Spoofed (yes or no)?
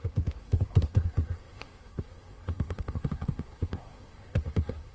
yes